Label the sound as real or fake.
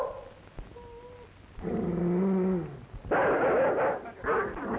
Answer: real